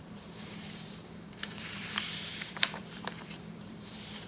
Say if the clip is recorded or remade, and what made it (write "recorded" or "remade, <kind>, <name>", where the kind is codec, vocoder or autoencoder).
remade, vocoder, BigVGAN v2